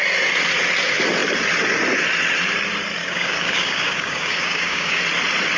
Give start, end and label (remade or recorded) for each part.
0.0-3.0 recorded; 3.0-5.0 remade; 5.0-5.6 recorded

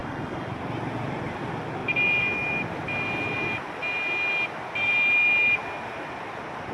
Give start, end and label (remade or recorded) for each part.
0.0-0.5 remade; 0.5-6.7 recorded

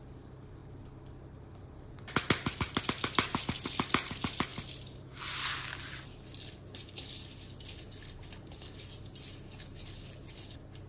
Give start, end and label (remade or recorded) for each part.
0.0-10.9 recorded

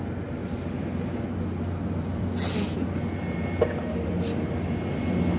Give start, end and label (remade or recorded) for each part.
0.0-5.4 recorded

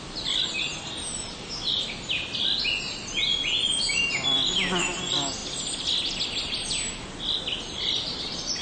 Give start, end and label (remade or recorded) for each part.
0.0-8.6 recorded